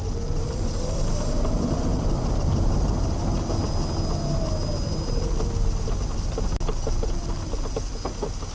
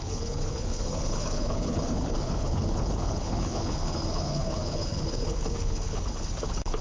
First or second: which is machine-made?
second